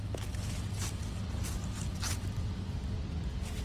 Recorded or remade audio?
recorded